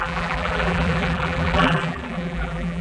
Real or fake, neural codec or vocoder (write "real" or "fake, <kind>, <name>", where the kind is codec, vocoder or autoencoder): fake, vocoder, BigVGAN v2